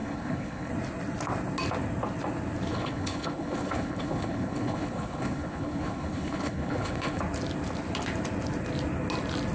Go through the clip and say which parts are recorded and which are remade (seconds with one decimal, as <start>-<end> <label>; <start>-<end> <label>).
0.0-0.7 remade; 0.7-2.7 recorded; 2.7-7.2 remade; 7.2-9.5 recorded